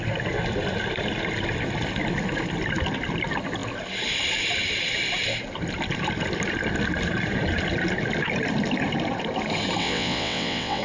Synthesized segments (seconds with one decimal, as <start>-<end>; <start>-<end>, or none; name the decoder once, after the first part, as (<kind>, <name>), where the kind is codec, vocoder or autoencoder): 9.8-10.8 (vocoder, WaveNeXt)

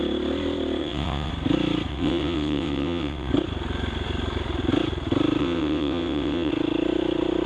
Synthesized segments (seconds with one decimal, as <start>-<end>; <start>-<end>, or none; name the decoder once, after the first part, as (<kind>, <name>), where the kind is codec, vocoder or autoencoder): 0.8-1.3 (vocoder, WaveNeXt); 1.9-3.3; 5.4-6.5

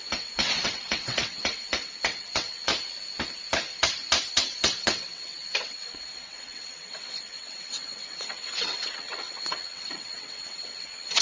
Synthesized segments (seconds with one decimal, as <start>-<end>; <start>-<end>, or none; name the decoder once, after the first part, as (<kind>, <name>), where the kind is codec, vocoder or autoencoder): 0.0-2.7 (vocoder, WaveNeXt); 4.3-11.2

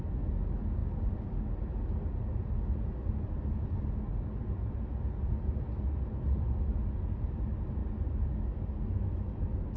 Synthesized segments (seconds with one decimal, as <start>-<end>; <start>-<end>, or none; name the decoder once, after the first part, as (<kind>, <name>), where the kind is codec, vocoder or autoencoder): none

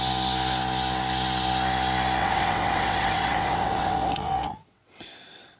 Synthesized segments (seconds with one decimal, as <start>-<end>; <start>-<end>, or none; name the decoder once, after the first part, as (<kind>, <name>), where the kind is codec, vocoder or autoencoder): 2.2-5.1 (vocoder, WaveNeXt)